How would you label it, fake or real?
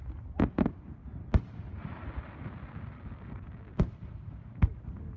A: real